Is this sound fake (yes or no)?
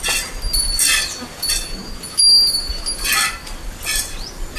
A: no